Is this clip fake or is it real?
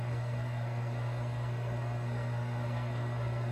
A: fake